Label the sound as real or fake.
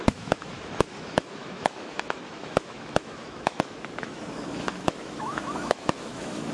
fake